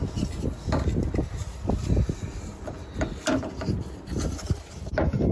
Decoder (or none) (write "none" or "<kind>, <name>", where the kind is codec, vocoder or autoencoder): none